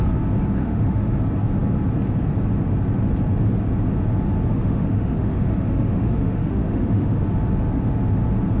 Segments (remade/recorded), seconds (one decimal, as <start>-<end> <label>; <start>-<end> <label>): 0.0-0.6 recorded; 0.6-1.2 remade; 1.2-4.5 recorded; 4.5-7.2 remade; 7.2-8.6 recorded